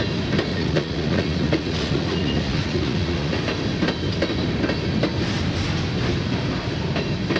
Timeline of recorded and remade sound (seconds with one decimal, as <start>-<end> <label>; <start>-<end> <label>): 0.0-0.5 recorded; 0.5-3.4 remade; 3.4-7.4 recorded